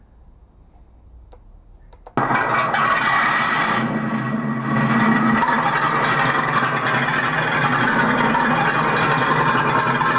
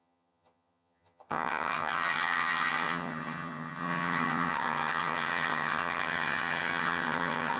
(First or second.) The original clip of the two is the first